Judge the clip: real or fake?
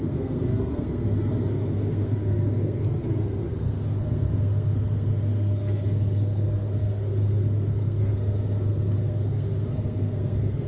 fake